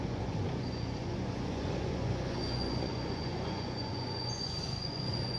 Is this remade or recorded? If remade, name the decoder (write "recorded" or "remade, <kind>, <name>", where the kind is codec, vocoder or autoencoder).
remade, vocoder, Vocos